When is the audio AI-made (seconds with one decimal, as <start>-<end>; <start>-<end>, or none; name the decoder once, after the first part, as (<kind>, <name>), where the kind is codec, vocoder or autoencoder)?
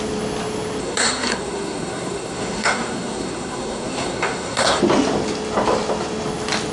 0.8-4.8 (codec, SNAC)